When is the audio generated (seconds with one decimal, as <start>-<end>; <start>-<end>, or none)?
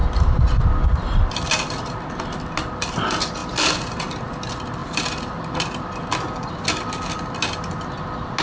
none